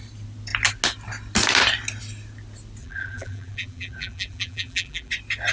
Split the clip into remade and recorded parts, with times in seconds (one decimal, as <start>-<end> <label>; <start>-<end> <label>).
0.0-2.8 recorded; 2.8-5.1 remade; 5.1-5.5 recorded